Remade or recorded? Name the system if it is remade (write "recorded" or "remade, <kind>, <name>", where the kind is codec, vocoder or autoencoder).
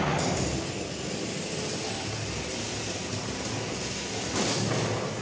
recorded